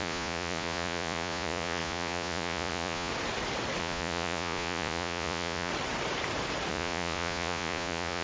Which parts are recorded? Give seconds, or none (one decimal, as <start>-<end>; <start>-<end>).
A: 3.1-3.8; 5.7-6.7